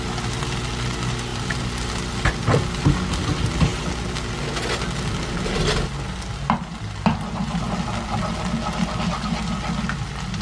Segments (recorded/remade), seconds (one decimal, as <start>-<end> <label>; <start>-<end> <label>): 0.0-10.4 recorded